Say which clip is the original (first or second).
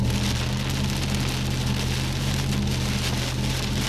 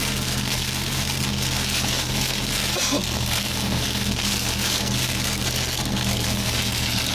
first